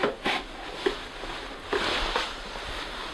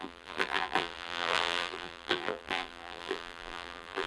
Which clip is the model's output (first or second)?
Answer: second